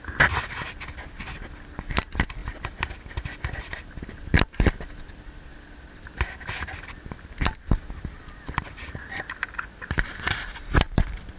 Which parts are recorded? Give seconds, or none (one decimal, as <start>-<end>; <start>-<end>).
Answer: 0.0-11.4